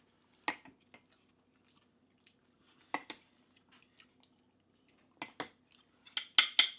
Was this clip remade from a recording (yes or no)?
no